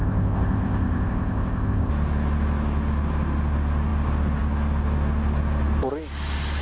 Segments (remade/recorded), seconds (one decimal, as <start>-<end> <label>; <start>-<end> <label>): 0.0-1.9 remade; 1.9-6.6 recorded